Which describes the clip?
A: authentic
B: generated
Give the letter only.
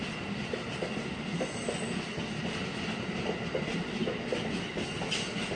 A